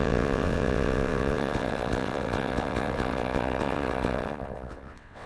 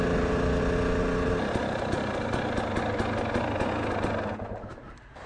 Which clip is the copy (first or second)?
first